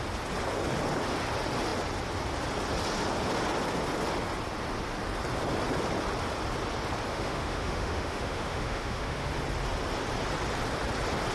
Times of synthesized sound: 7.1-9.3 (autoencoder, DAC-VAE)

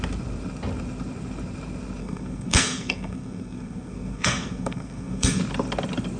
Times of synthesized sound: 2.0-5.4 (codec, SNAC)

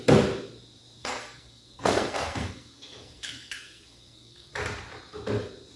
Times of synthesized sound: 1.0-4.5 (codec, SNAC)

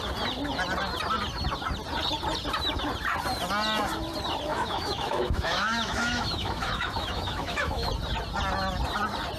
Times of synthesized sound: 4.5-7.9 (autoencoder, DAC-VAE)

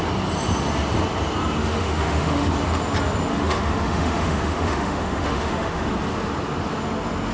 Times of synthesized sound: 1.6-2.5 (autoencoder, DAC-VAE); 3.3-5.9